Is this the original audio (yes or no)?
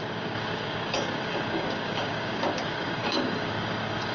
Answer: no